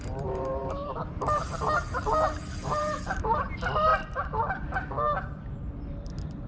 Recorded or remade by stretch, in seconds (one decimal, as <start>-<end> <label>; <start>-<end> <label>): 0.0-0.6 recorded; 0.6-3.4 remade; 3.4-6.5 recorded